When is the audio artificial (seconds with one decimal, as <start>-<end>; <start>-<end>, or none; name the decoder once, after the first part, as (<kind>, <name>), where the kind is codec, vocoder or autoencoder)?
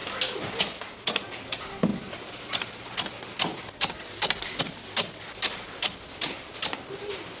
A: none